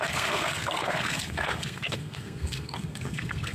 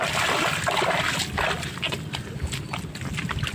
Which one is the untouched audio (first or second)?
second